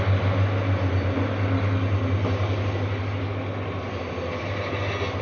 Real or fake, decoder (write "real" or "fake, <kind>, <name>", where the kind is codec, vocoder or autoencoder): real